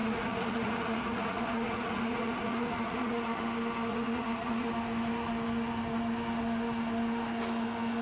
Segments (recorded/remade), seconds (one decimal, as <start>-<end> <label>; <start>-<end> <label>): 0.0-3.4 remade; 3.4-3.9 recorded; 3.9-4.7 remade; 4.7-8.0 recorded